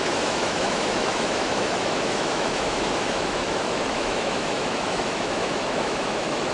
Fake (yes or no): yes